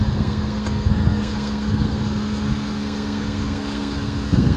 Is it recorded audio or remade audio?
remade